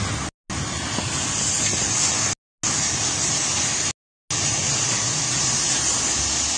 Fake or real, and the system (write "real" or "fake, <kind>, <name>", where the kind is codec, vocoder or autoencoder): real